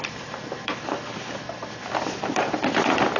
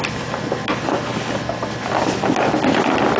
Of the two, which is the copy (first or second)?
first